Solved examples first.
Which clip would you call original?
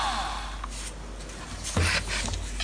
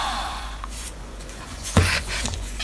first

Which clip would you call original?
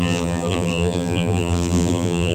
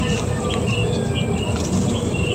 second